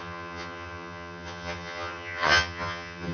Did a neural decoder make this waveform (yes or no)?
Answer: yes